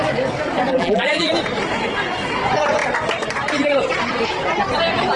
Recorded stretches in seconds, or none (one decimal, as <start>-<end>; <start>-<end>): 0.0-0.7; 1.3-5.2